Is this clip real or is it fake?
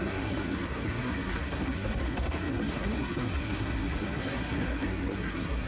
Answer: fake